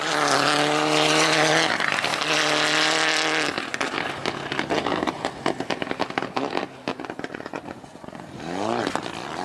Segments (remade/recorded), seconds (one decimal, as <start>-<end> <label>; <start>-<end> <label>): 0.0-6.9 recorded; 6.9-8.4 remade; 8.4-9.4 recorded